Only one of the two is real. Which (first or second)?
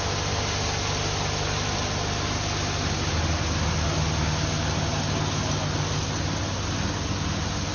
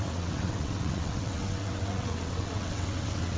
first